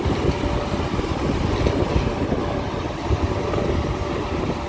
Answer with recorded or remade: recorded